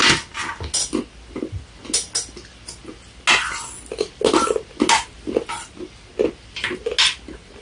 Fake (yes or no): no